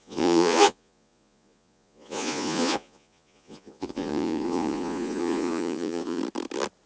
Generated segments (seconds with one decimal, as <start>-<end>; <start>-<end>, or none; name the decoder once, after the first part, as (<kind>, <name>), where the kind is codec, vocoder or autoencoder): 0.0-6.2 (vocoder, Vocos)